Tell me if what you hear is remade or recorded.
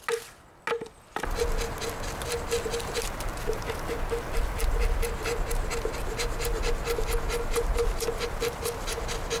recorded